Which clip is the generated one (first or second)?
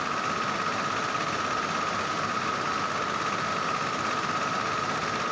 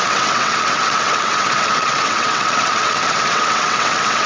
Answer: second